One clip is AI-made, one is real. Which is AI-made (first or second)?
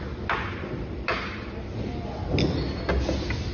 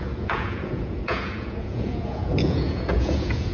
second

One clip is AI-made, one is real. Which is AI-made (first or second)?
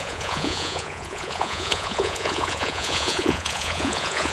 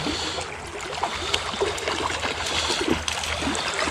first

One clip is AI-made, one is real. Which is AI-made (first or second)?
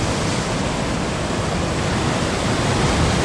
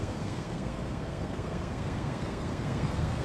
second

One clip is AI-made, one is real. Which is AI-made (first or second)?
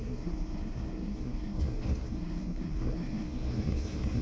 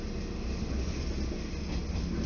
first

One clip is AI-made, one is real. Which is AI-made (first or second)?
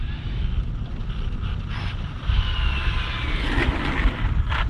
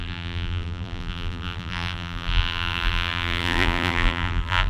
second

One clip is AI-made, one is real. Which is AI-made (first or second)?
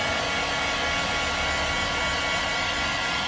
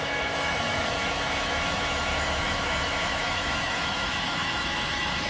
second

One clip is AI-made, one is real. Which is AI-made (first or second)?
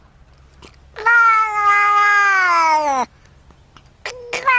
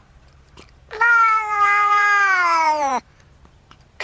second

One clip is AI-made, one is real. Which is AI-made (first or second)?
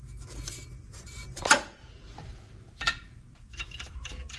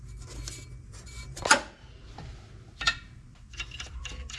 first